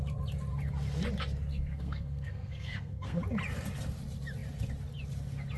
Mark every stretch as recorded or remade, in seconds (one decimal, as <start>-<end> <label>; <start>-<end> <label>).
0.0-1.5 recorded; 1.5-3.2 remade; 3.2-5.6 recorded